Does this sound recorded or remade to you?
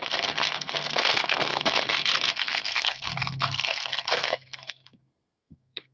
remade